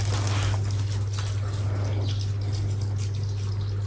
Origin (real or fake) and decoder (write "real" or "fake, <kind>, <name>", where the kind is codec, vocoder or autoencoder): real